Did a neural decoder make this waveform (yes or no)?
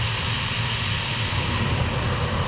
no